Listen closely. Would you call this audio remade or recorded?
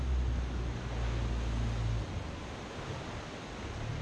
recorded